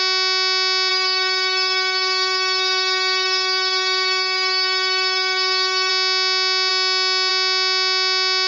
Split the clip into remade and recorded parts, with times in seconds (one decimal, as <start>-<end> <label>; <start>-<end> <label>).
0.0-0.9 recorded; 0.9-5.9 remade; 5.9-8.5 recorded